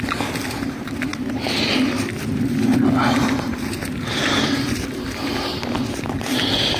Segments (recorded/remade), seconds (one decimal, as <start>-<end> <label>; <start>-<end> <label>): 0.0-6.8 recorded